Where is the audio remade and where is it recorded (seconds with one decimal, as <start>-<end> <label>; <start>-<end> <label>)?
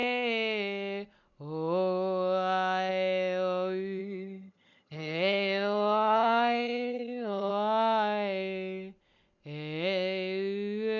0.0-4.0 recorded; 4.0-7.5 remade; 7.5-11.0 recorded